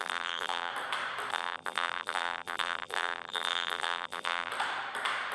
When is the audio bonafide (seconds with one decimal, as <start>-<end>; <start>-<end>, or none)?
0.7-1.3; 4.5-5.3